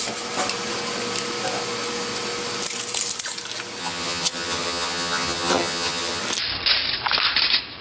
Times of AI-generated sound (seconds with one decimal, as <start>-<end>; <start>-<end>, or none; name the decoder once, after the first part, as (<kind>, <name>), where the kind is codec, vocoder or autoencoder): 3.8-6.2 (vocoder, HiFi-GAN)